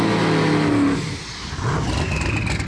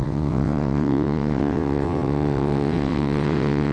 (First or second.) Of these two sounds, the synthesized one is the second